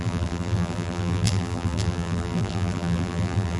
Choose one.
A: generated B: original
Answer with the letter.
A